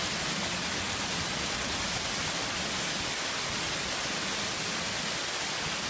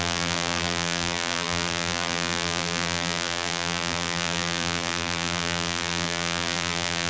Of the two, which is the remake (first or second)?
second